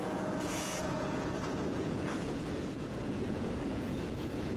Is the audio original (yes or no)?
no